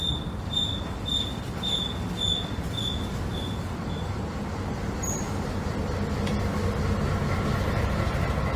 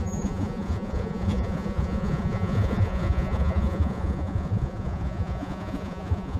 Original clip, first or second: first